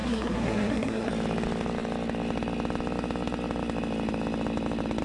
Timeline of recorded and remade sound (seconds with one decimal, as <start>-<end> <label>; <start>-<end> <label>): 0.0-1.1 remade; 1.1-5.0 recorded